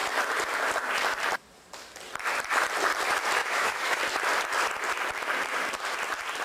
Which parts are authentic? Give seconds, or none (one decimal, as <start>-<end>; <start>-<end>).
0.0-3.4; 4.0-6.4